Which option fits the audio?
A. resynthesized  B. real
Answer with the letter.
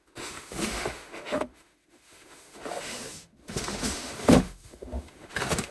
A